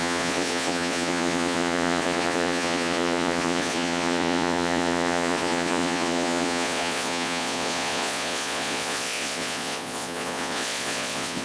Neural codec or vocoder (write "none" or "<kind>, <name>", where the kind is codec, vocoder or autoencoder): vocoder, Vocos